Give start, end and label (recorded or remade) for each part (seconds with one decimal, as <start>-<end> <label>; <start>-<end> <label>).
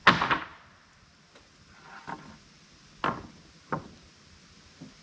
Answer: 0.0-5.0 recorded